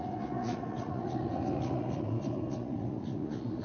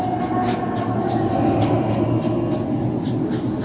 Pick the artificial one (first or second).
first